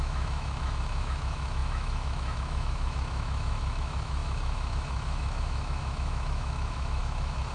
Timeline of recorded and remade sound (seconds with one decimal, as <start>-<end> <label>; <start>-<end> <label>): 0.0-7.5 remade